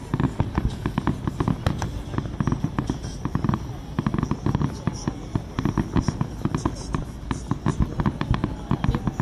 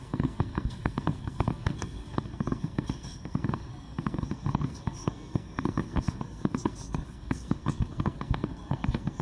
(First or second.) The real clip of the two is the first